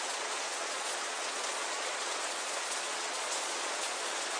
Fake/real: fake